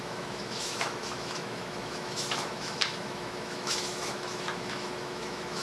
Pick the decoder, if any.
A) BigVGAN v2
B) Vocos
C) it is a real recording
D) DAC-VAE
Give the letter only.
D